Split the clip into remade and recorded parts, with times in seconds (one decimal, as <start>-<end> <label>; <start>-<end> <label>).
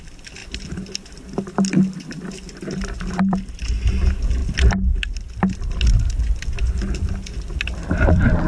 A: 0.0-4.4 recorded; 4.4-5.0 remade; 5.0-7.5 recorded; 7.5-8.5 remade